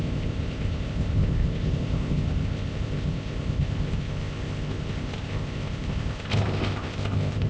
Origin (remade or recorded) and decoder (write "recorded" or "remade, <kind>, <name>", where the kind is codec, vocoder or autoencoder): remade, codec, ZipCodec